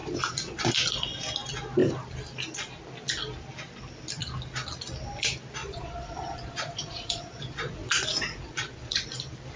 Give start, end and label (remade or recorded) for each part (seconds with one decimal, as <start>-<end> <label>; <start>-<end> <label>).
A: 0.0-0.7 remade; 0.7-5.6 recorded; 5.6-9.0 remade; 9.0-9.6 recorded